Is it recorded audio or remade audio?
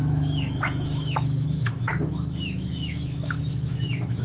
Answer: remade